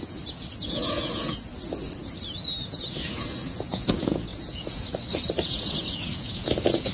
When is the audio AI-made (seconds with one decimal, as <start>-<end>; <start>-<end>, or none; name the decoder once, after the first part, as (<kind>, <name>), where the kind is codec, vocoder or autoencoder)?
0.0-1.5 (vocoder, Vocos); 2.6-6.9